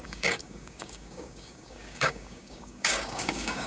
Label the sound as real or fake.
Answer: fake